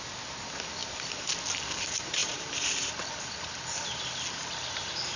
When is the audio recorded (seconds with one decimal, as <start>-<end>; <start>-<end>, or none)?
0.0-0.8; 1.4-2.2; 2.9-5.2